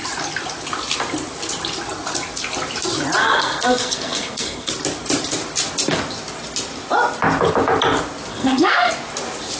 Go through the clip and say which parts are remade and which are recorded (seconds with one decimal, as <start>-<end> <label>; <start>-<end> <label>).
0.0-3.2 recorded; 3.2-4.7 remade; 4.7-8.3 recorded; 8.3-8.9 remade; 8.9-9.6 recorded